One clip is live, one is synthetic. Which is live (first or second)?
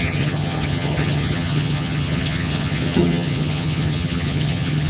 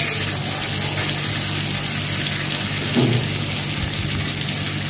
second